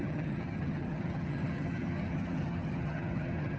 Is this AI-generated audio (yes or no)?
yes